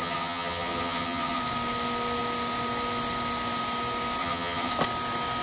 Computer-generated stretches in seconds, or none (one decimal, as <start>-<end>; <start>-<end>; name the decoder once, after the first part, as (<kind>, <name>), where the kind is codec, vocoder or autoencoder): 0.0-1.4 (vocoder, HiFi-GAN); 4.2-4.7